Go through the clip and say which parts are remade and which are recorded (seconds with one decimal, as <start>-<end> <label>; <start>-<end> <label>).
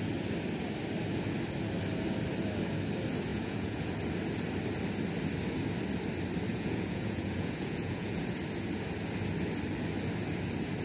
0.0-3.3 recorded; 3.3-3.9 remade; 3.9-6.5 recorded; 6.5-8.4 remade; 8.4-10.8 recorded